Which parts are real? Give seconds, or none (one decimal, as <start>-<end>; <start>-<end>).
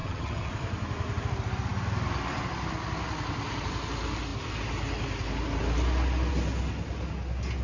0.5-7.6